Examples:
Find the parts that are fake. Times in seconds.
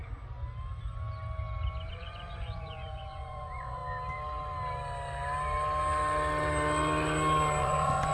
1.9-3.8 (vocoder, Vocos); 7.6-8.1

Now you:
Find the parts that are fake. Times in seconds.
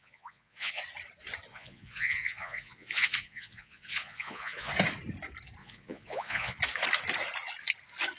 0.0-0.8 (vocoder, Vocos); 1.5-4.7; 5.6-6.6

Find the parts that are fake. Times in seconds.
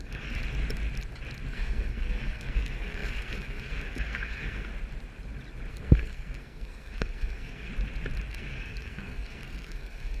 0.0-0.4 (codec, SNAC); 1.5-4.7; 5.7-7.7; 8.3-10.2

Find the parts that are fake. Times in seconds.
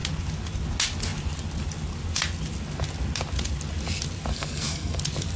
4.3-5.0 (codec, SNAC)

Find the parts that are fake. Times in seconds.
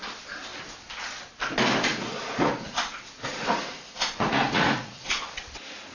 1.9-5.2 (vocoder, Vocos)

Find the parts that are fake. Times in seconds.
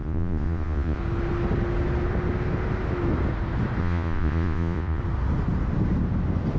0.0-1.0 (vocoder, Vocos); 3.8-5.0